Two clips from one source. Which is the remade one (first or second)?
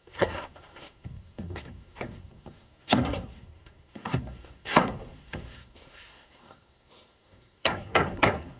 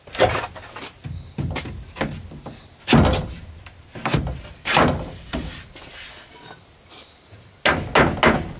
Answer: first